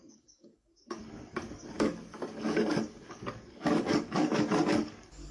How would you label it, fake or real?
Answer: fake